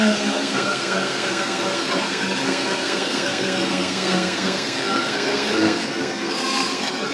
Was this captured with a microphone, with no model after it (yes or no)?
no